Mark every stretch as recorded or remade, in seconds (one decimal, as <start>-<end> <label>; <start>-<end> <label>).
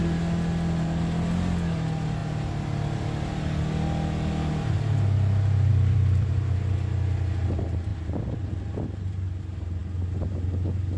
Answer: 0.0-5.7 recorded; 5.7-6.3 remade; 6.3-7.9 recorded; 7.9-8.5 remade; 8.5-11.0 recorded